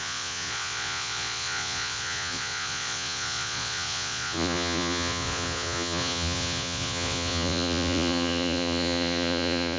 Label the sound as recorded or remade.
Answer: remade